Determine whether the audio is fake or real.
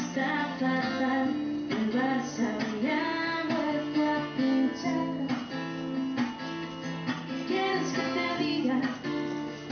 real